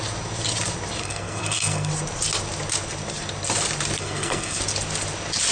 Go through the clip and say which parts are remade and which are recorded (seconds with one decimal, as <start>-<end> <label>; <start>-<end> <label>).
0.0-1.0 recorded; 1.0-1.9 remade; 1.9-4.0 recorded; 4.0-4.6 remade; 4.6-5.5 recorded